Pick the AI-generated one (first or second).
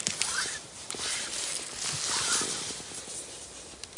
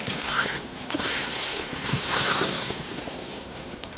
second